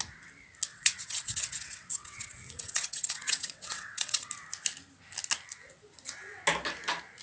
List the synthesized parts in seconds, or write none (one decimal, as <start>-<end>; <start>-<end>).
0.7-4.3